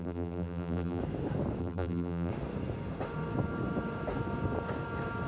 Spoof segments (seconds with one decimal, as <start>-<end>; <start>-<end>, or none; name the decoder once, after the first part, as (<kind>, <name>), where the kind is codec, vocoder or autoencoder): 0.0-1.0 (vocoder, BigVGAN v2); 1.6-2.3